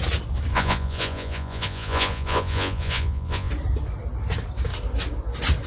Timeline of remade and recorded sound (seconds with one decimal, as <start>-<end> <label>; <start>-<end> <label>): 0.0-0.5 recorded; 0.5-3.5 remade; 3.5-5.7 recorded